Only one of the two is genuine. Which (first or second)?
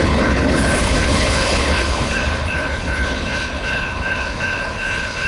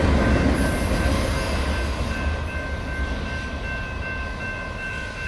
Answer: second